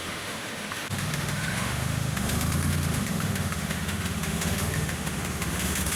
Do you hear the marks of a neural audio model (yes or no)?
yes